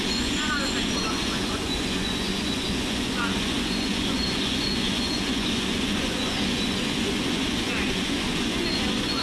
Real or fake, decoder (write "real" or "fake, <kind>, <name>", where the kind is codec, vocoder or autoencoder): fake, vocoder, Vocos